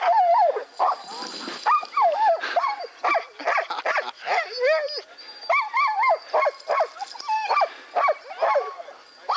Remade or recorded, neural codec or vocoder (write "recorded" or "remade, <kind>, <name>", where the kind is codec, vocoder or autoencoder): recorded